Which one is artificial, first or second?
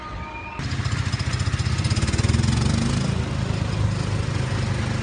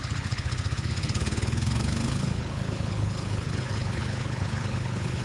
second